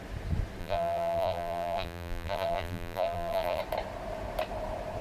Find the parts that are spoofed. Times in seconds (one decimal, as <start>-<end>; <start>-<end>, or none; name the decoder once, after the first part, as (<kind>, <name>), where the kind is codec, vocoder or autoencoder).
0.6-3.6 (vocoder, BigVGAN v2)